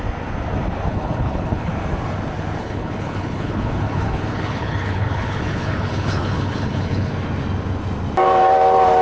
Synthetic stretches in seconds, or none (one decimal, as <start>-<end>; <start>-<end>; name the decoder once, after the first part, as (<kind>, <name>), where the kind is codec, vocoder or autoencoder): 0.9-1.7 (codec, HILCodec); 2.6-7.1